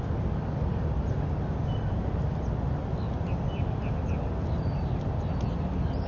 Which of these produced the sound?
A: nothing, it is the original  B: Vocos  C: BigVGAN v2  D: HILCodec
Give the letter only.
A